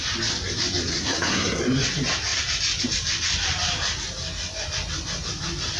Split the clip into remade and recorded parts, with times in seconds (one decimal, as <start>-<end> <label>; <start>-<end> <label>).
0.0-0.9 recorded; 0.9-1.6 remade; 1.6-5.8 recorded